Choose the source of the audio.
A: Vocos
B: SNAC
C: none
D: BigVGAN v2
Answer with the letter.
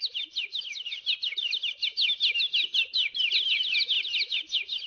C